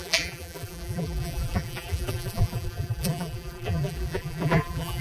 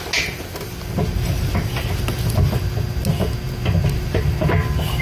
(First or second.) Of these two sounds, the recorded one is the second